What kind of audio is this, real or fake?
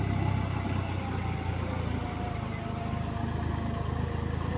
real